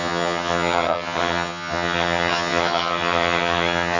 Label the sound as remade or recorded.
remade